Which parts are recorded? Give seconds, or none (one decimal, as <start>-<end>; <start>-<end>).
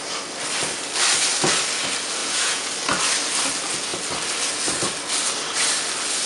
0.0-2.2; 2.7-6.3